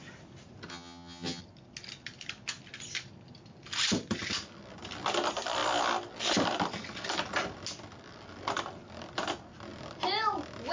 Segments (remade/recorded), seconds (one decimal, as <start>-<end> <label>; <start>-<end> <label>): 0.0-0.7 recorded; 0.7-1.4 remade; 1.4-10.7 recorded